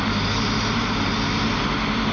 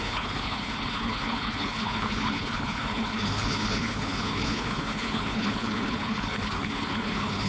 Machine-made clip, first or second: second